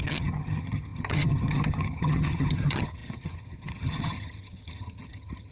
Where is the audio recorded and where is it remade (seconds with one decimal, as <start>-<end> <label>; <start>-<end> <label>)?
0.0-5.5 remade